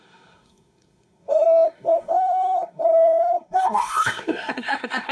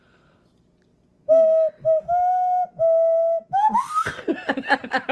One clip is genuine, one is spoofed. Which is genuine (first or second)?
second